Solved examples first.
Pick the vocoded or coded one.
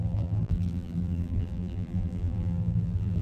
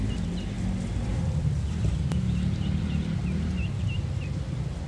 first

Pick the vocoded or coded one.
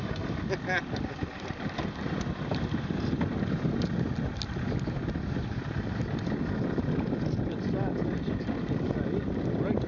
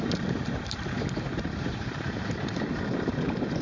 second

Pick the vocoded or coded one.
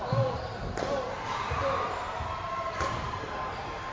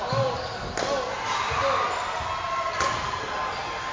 first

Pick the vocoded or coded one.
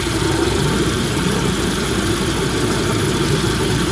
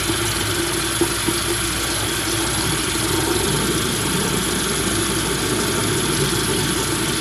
first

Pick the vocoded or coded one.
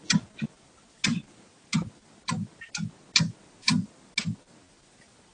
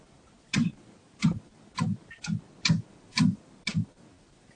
second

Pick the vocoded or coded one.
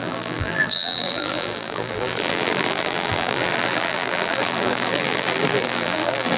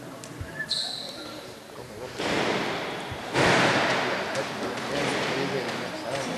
first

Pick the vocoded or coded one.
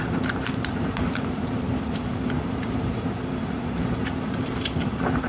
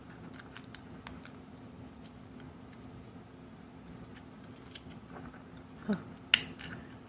first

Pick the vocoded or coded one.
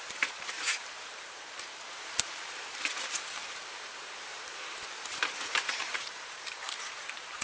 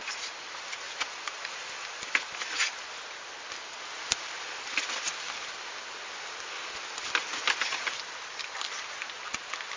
first